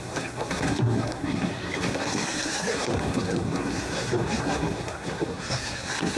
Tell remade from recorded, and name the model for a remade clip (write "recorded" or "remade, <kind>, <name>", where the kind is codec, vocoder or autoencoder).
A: remade, codec, SNAC